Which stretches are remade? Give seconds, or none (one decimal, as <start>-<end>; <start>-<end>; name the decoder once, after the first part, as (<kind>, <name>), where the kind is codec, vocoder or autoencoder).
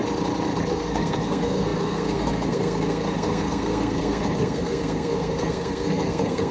0.7-6.5 (codec, SNAC)